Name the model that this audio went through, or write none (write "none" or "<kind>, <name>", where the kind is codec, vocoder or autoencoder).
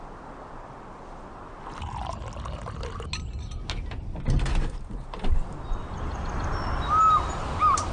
none